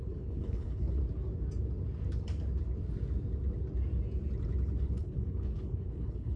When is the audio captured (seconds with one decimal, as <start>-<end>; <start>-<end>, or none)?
1.0-4.8